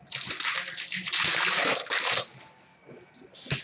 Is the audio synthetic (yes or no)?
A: no